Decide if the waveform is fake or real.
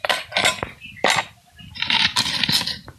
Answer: real